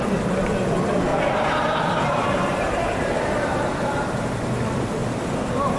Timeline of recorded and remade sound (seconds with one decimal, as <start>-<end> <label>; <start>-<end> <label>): 0.0-1.1 recorded; 1.1-3.1 remade; 3.1-5.0 recorded; 5.0-5.8 remade